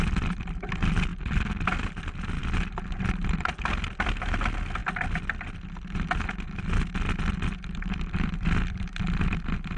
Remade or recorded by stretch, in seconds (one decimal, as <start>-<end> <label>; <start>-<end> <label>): 0.0-9.8 recorded